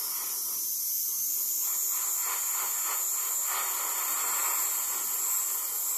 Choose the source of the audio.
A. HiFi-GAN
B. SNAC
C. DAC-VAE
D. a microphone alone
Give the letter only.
D